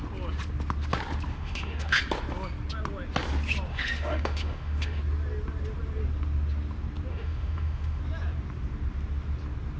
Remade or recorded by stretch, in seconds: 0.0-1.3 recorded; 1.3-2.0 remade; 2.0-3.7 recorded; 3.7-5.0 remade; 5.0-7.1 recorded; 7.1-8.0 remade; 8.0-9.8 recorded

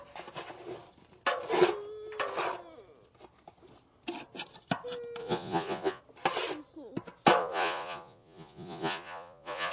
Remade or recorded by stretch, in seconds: 0.0-5.2 recorded; 5.2-6.0 remade; 6.0-7.4 recorded; 7.4-9.7 remade